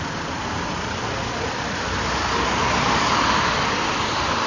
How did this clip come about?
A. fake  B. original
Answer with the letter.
B